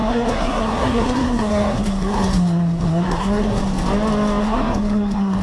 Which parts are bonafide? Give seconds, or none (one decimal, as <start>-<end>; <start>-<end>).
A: 3.6-4.4

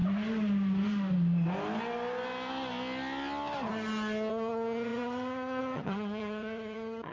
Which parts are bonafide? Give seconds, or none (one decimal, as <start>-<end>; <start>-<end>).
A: 0.0-4.3

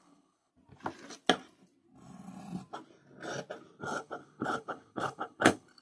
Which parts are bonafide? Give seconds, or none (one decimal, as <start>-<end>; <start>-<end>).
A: 0.5-3.8